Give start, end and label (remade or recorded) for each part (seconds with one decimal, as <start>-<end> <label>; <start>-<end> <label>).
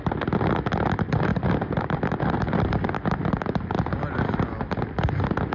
0.0-1.3 recorded; 1.3-3.4 remade; 3.4-5.5 recorded